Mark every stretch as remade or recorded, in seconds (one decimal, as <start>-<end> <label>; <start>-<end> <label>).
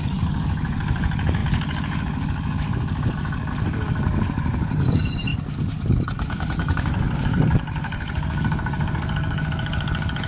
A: 0.0-10.3 remade